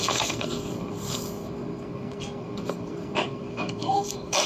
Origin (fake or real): fake